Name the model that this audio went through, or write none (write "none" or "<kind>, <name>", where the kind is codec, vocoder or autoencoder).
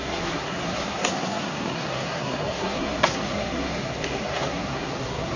codec, SNAC